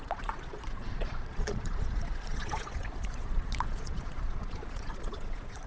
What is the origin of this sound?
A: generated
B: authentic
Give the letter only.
A